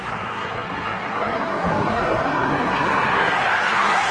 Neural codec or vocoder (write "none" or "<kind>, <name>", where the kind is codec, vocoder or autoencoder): codec, SNAC